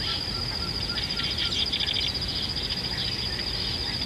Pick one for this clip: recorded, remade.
recorded